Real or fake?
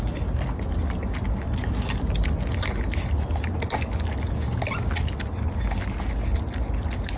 real